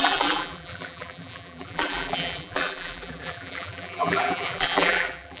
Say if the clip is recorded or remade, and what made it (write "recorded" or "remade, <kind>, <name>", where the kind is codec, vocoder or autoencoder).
remade, vocoder, BigVGAN v2